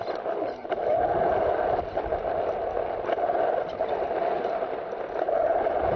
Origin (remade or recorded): recorded